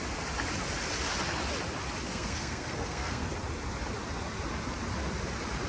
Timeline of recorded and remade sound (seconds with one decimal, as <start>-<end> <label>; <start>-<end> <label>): 0.0-2.1 recorded; 2.1-3.3 remade; 3.3-5.7 recorded